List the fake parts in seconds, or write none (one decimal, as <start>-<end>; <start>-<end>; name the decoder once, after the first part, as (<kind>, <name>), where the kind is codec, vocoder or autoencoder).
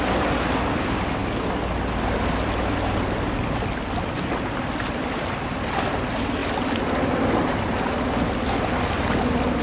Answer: none